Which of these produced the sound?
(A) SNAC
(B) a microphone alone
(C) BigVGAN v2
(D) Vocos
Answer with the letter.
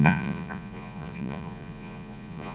D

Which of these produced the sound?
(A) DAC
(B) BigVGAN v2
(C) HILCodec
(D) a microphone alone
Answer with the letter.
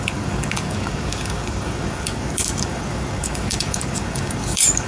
A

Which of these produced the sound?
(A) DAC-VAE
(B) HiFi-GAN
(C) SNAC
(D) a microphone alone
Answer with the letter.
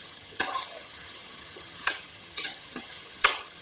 B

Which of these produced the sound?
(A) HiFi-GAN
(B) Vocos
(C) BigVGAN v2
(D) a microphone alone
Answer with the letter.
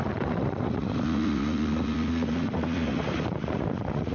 B